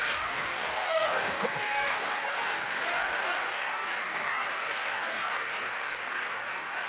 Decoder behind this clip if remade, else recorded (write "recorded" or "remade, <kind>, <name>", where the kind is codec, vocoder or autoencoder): remade, codec, DAC